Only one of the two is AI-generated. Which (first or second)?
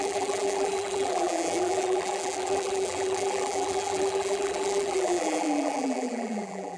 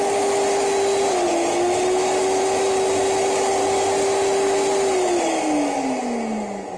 first